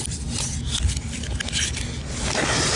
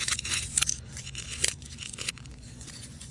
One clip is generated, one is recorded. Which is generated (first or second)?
second